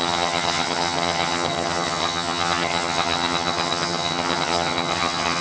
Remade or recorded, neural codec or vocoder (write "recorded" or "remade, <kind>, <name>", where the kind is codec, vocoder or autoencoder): remade, vocoder, HiFi-GAN